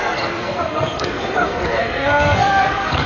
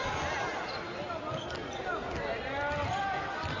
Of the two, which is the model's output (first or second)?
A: first